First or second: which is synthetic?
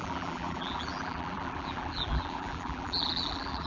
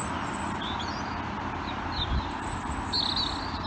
first